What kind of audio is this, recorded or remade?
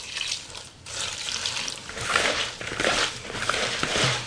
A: remade